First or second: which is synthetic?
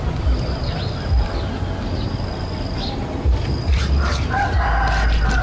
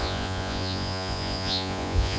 second